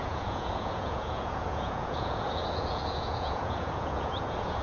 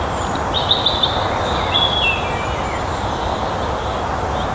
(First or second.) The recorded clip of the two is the second